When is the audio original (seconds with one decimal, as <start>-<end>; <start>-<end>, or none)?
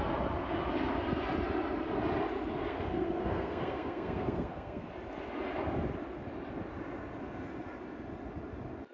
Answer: 0.0-2.7; 4.9-8.9